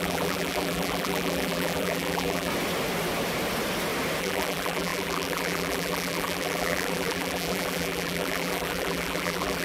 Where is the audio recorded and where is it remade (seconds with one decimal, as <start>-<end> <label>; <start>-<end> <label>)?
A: 0.0-2.5 remade; 2.5-4.2 recorded; 4.2-9.6 remade

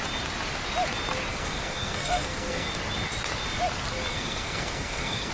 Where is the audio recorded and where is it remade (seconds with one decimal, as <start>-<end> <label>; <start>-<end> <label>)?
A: 0.0-1.3 recorded; 1.3-2.7 remade; 2.7-4.1 recorded; 4.1-5.3 remade

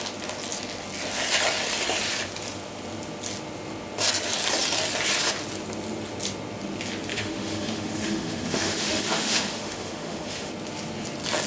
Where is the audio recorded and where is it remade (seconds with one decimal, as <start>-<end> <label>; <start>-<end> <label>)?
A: 0.0-7.1 recorded; 7.1-10.5 remade; 10.5-11.5 recorded